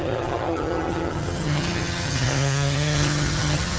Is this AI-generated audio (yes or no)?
yes